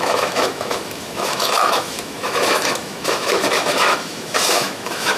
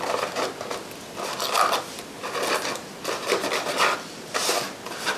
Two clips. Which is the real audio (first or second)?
second